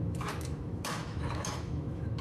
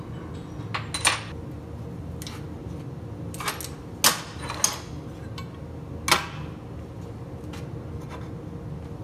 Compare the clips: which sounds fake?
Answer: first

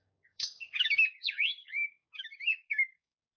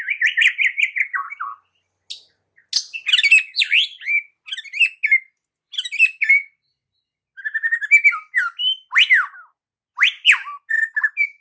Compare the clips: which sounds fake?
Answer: first